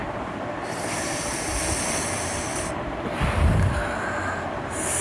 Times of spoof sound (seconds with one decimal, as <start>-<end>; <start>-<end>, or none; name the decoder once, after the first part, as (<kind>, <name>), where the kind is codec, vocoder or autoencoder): none